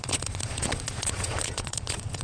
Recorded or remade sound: remade